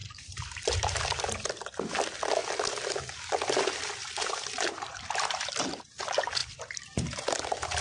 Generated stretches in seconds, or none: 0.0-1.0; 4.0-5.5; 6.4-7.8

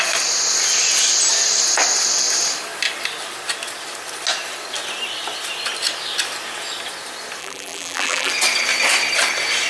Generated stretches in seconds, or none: 7.4-8.3